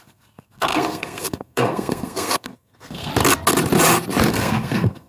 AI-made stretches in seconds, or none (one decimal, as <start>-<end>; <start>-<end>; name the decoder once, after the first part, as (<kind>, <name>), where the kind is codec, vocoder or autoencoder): 0.0-3.1 (codec, SNAC); 4.3-5.1